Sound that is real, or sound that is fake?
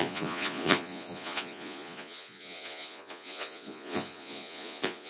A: fake